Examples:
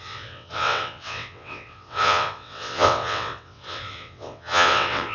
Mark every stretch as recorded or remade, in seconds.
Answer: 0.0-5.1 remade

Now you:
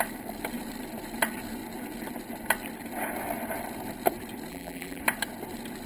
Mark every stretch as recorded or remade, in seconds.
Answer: 0.0-4.5 recorded; 4.5-5.0 remade; 5.0-5.9 recorded

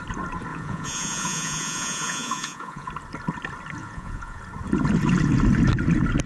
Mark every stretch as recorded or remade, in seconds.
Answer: 0.0-0.5 recorded; 0.5-2.9 remade; 2.9-3.8 recorded; 3.8-4.4 remade; 4.4-6.3 recorded